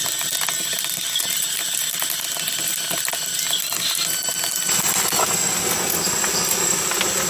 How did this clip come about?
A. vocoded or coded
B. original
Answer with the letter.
B